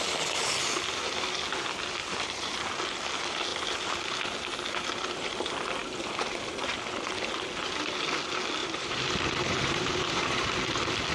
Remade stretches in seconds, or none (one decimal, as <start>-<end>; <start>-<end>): 2.0-2.5; 8.6-10.4